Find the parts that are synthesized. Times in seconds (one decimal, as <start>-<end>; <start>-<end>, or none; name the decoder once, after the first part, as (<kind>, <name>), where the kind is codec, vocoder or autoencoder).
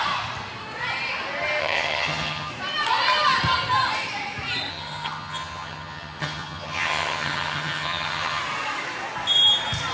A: 1.6-2.5 (vocoder, HiFi-GAN); 4.7-8.4